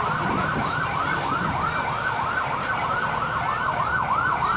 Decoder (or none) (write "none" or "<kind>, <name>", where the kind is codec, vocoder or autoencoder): none